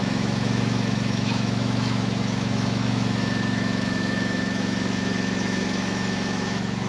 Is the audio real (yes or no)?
no